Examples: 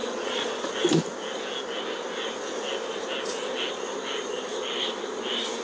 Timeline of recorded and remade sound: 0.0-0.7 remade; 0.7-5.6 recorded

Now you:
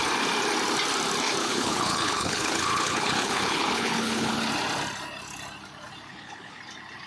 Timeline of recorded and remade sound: 0.0-1.4 recorded; 1.4-4.4 remade; 4.4-6.1 recorded; 6.1-6.6 remade; 6.6-7.1 recorded

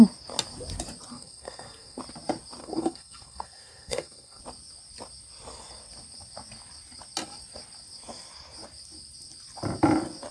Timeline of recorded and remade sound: 0.0-1.1 recorded; 1.1-2.0 remade; 2.0-2.6 recorded; 2.6-4.4 remade; 4.4-10.3 recorded

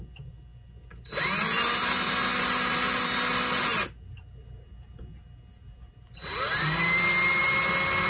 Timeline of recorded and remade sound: 0.0-8.1 recorded

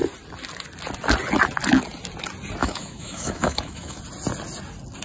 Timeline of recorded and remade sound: 0.0-2.6 recorded; 2.6-4.0 remade; 4.0-5.0 recorded

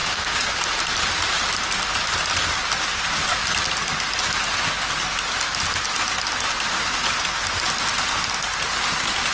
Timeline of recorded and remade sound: 0.0-0.6 remade; 0.6-9.3 recorded

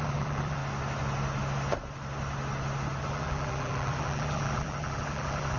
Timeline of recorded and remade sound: 0.0-0.6 remade; 0.6-3.0 recorded; 3.0-5.6 remade